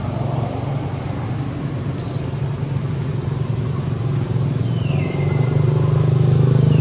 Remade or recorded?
recorded